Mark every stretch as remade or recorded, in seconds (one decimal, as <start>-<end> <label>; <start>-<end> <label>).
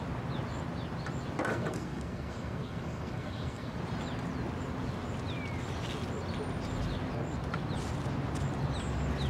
0.0-1.5 recorded; 1.5-3.8 remade; 3.8-9.3 recorded